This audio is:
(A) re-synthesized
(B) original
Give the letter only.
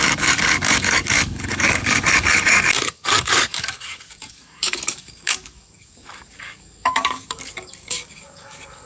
A